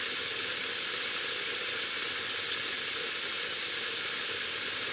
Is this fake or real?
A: real